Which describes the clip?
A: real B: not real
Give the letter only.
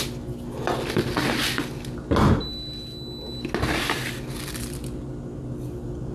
A